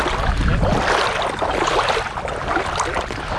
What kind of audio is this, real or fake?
real